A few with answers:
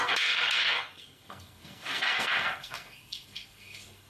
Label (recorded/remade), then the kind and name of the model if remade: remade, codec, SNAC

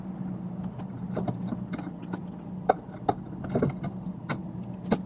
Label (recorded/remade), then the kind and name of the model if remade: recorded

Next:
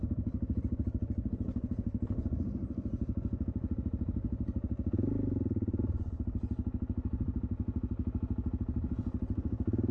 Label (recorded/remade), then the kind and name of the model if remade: recorded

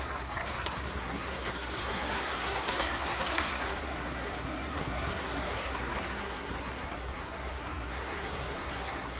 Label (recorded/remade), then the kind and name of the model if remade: remade, codec, SNAC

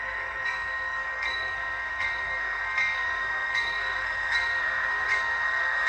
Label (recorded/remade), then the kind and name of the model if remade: remade, codec, SNAC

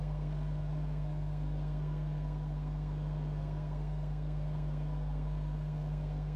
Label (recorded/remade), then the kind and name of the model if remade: remade, codec, SNAC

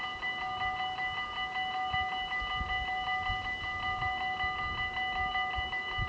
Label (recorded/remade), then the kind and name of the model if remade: recorded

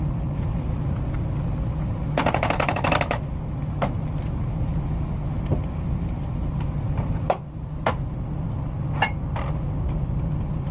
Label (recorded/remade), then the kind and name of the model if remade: recorded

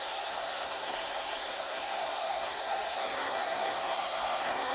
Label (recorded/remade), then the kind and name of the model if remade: remade, codec, SNAC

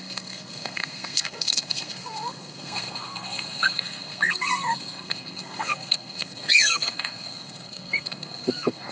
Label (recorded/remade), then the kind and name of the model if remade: remade, codec, SNAC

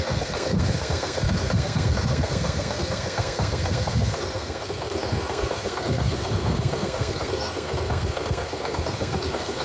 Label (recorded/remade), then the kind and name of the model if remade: remade, codec, SNAC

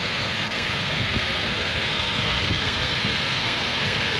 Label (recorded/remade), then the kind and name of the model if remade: remade, codec, SNAC